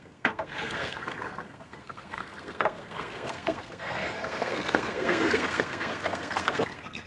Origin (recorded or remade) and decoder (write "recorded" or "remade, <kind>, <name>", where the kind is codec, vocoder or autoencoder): remade, codec, SNAC